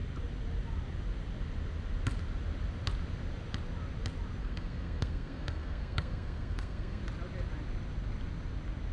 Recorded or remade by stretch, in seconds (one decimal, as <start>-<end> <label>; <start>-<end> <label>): 0.0-4.4 recorded; 4.4-7.0 remade; 7.0-8.9 recorded